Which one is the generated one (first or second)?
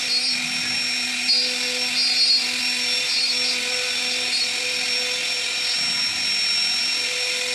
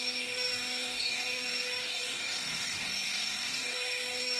second